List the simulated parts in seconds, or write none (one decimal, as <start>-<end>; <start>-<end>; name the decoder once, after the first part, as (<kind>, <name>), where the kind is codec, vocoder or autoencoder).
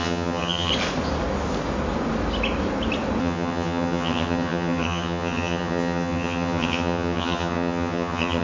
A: 0.0-0.7 (vocoder, HiFi-GAN); 3.2-8.4